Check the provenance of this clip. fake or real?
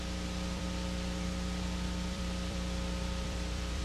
fake